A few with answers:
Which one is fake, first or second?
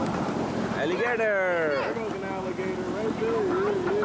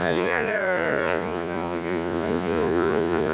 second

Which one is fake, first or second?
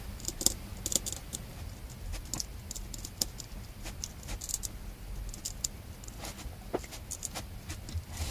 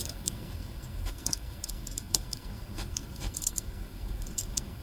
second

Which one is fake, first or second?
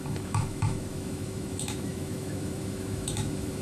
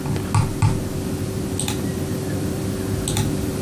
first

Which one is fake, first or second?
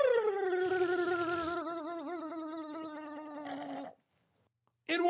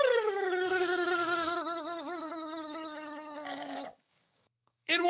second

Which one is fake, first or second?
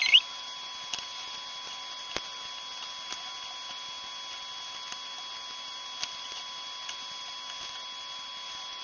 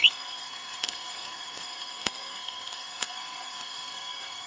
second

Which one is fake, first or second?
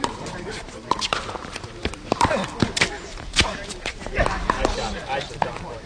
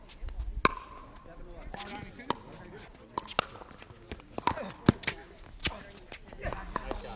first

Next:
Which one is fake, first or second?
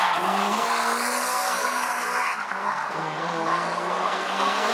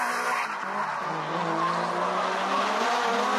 first